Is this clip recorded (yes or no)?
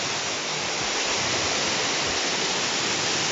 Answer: yes